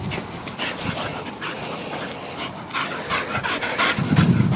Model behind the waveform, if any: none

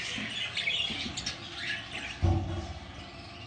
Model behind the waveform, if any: none